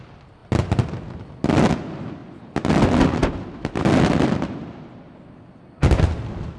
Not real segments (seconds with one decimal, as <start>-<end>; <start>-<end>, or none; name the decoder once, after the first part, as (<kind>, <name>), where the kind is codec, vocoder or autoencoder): none

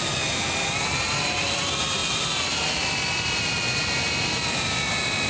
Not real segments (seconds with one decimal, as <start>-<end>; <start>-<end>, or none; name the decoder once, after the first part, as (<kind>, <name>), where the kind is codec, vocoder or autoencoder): none

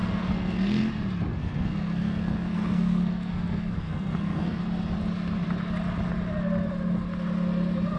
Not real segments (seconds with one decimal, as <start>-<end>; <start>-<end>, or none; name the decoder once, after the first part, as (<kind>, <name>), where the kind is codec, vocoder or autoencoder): 0.0-0.9 (codec, SNAC); 1.3-4.6

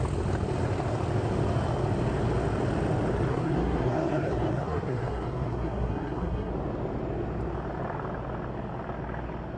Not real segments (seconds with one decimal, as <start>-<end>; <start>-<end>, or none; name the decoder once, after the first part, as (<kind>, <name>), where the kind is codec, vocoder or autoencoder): 3.3-6.5 (codec, SNAC)

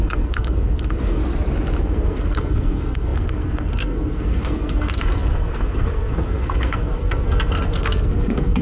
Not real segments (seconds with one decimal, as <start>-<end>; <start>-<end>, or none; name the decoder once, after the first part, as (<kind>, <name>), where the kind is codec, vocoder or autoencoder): 0.0-1.2 (codec, SNAC); 1.8-8.6